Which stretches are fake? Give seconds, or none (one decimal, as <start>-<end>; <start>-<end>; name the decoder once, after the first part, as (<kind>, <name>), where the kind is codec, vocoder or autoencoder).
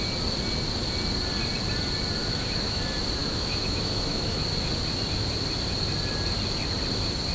2.2-2.8 (autoencoder, DAC-VAE); 3.2-4.4